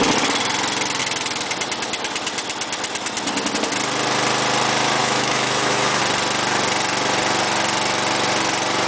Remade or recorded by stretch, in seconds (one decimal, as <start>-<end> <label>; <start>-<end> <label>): 0.0-5.0 recorded; 5.0-6.0 remade; 6.0-8.9 recorded